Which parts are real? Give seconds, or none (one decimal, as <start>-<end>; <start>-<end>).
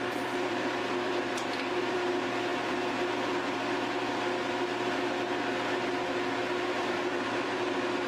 1.1-1.9; 2.5-6.8